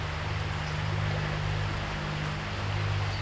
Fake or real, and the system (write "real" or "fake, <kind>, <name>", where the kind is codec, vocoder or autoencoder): real